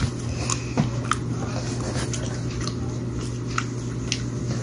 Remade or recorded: recorded